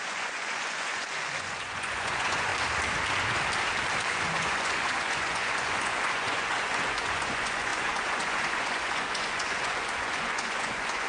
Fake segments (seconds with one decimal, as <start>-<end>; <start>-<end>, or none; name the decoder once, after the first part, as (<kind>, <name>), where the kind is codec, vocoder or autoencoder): 0.0-2.5 (vocoder, Vocos); 4.1-11.1